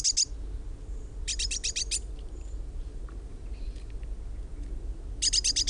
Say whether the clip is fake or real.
real